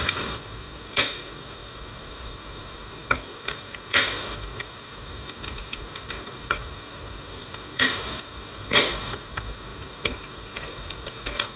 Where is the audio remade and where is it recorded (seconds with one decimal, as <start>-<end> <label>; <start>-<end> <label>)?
0.0-11.6 remade